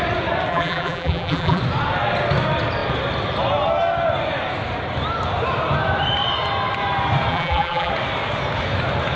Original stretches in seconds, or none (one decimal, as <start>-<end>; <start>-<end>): 0.0-0.5; 1.6-7.3; 7.9-9.2